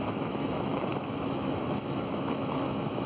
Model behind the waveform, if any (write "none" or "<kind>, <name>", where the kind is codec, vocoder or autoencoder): autoencoder, DAC-VAE